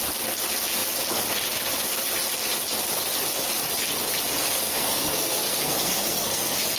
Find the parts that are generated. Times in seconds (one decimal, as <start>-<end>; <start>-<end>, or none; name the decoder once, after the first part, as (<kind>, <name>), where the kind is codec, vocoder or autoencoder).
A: 4.4-6.8 (codec, SNAC)